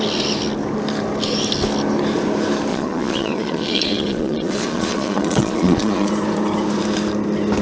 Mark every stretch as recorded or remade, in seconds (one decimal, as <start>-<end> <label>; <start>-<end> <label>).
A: 0.0-2.7 recorded; 2.7-6.1 remade; 6.1-7.6 recorded

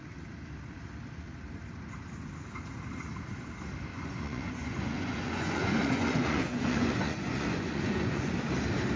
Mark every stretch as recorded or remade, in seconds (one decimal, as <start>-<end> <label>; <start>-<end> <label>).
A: 0.0-3.9 recorded; 3.9-8.3 remade; 8.3-9.0 recorded

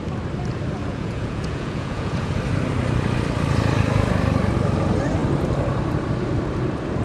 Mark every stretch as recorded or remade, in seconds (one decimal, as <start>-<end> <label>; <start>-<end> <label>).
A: 0.0-0.8 recorded; 0.8-2.3 remade; 2.3-7.0 recorded

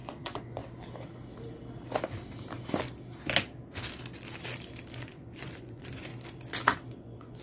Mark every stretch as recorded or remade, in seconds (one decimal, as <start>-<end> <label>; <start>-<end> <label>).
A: 0.0-0.6 remade; 0.6-5.0 recorded; 5.0-6.1 remade; 6.1-6.9 recorded; 6.9-7.4 remade